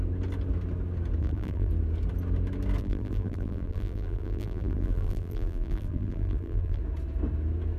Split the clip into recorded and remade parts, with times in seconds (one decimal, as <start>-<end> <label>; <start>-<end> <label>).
0.0-1.2 recorded; 1.2-1.7 remade; 1.7-2.8 recorded; 2.8-6.8 remade; 6.8-7.8 recorded